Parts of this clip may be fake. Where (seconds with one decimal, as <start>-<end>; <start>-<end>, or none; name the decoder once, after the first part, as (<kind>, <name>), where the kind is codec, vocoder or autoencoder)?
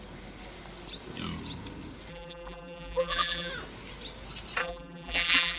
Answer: 2.1-3.5 (vocoder, BigVGAN v2); 4.6-5.6